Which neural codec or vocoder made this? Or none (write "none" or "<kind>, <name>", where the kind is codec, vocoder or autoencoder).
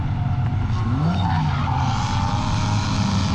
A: none